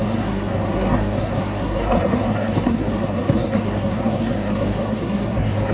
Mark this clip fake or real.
fake